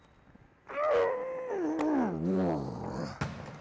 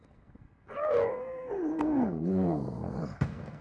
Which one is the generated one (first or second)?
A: second